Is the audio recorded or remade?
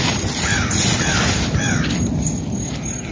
recorded